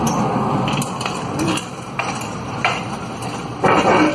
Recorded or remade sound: recorded